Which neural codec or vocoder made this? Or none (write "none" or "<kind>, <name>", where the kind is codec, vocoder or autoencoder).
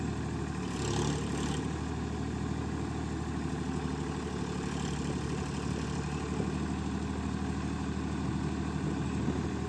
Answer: none